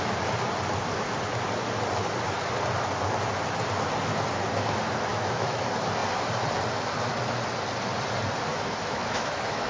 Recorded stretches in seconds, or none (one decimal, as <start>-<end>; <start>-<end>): 0.0-5.1; 5.6-8.5